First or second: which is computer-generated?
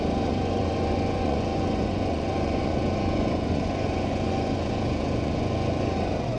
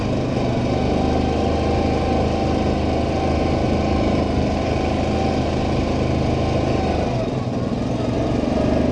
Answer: first